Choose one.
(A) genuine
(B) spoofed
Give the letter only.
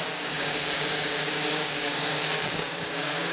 B